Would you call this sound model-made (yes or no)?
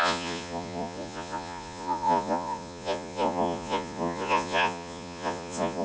yes